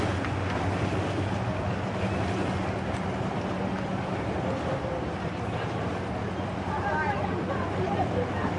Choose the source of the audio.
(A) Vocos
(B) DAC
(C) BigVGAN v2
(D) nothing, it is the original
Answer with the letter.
D